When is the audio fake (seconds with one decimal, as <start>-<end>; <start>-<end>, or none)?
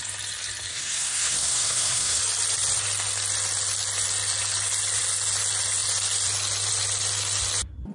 0.7-2.2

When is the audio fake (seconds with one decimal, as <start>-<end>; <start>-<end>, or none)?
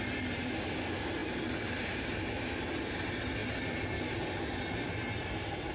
none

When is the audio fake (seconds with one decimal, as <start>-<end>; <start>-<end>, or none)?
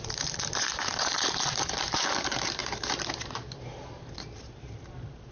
0.0-5.3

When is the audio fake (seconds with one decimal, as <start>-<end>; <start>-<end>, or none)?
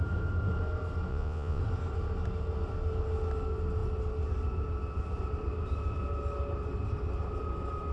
1.1-1.6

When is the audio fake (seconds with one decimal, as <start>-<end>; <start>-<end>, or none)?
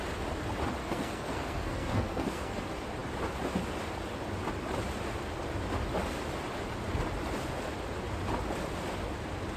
0.8-2.6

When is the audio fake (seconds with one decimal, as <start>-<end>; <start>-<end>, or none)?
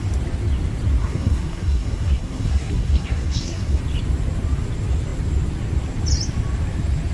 1.0-3.8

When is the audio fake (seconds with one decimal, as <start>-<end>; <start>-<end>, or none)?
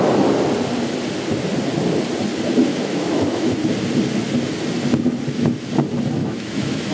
2.7-3.5; 6.2-6.9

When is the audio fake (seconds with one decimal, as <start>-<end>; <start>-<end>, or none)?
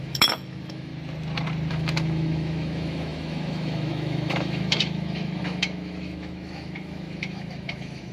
0.0-0.9; 1.7-8.1